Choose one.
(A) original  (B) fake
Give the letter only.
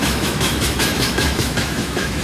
B